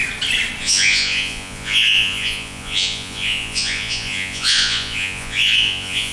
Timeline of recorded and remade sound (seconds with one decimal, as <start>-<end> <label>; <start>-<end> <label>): 0.0-0.6 recorded; 0.6-6.1 remade